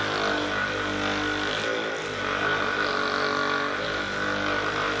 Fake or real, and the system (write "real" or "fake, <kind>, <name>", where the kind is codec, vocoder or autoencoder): real